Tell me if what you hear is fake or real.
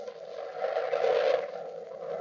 real